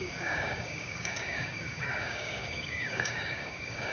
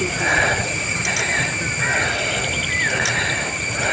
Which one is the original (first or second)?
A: second